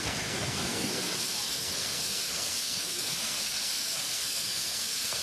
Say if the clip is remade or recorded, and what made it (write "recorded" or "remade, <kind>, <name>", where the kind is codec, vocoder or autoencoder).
remade, codec, SNAC